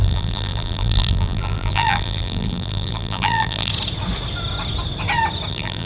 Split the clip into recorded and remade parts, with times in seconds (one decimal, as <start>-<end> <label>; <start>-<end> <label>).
0.0-3.7 remade; 3.7-5.5 recorded; 5.5-5.9 remade